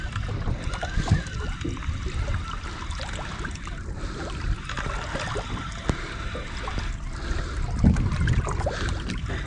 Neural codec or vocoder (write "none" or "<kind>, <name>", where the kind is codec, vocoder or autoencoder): none